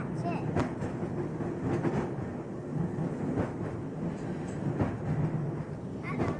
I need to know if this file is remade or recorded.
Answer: recorded